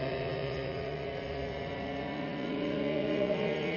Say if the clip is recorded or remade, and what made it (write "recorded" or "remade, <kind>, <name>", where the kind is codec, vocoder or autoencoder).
remade, vocoder, Vocos